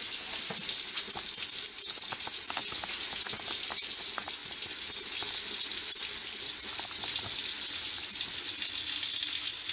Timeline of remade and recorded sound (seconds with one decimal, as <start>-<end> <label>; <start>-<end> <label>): 0.0-6.2 recorded; 6.2-7.0 remade; 7.0-9.7 recorded